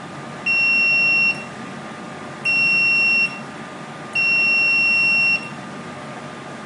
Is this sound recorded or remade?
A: recorded